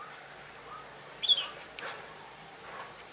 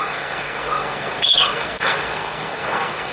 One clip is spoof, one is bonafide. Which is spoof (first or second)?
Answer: second